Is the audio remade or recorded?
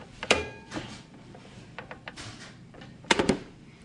remade